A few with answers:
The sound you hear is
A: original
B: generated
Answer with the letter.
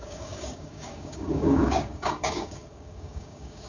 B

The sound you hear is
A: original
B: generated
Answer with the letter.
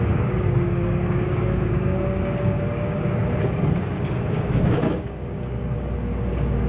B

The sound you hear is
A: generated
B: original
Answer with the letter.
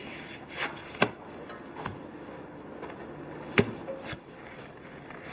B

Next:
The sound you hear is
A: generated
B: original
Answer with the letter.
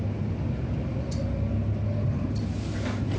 B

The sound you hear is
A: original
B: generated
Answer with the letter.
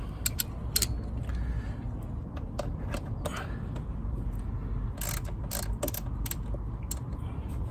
A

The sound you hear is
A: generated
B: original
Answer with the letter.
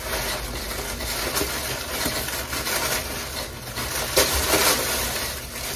B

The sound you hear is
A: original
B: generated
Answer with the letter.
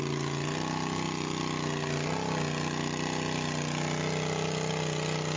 A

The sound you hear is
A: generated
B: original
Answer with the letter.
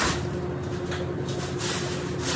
B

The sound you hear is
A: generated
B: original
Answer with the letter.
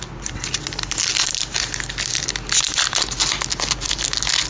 B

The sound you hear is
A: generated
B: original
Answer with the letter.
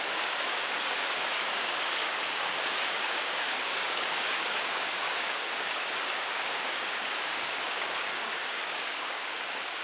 A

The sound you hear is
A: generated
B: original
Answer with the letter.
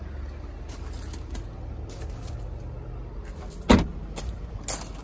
B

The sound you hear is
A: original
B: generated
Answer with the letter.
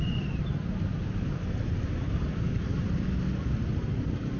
A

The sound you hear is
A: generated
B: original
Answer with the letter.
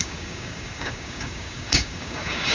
A